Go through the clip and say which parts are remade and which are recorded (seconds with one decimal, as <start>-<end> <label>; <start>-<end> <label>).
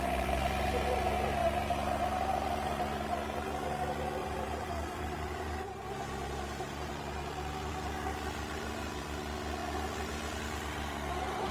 0.0-4.2 recorded; 4.2-6.9 remade; 6.9-11.5 recorded